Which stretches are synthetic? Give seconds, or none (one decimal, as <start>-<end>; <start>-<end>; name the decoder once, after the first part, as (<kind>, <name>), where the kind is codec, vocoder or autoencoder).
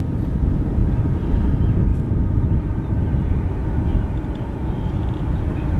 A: 0.0-1.9 (vocoder, BigVGAN v2); 2.6-3.6; 5.0-5.8